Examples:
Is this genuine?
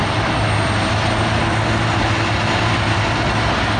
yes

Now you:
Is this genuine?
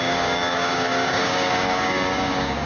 no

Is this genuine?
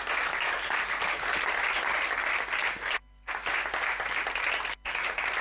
yes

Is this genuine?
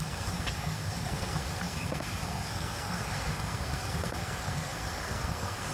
no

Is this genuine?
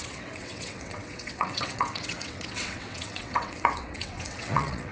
no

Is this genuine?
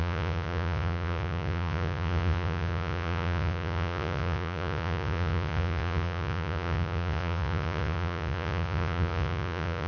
no